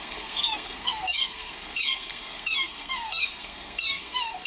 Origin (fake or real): fake